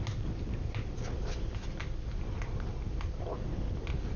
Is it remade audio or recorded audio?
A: recorded